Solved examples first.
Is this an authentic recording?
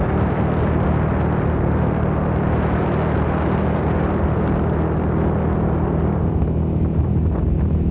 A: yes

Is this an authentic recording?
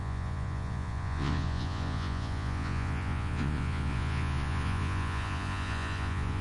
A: no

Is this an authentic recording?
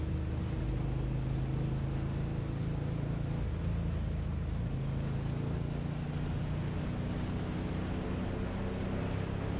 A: yes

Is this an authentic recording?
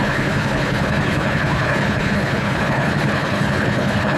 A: no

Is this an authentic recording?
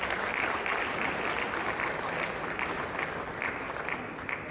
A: yes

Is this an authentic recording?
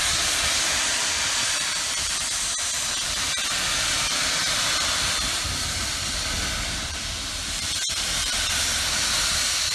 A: no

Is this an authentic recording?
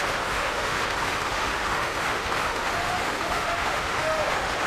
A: no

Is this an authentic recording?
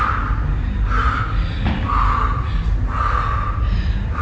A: yes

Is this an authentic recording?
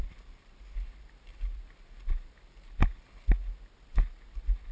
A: yes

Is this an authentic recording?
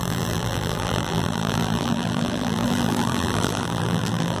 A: no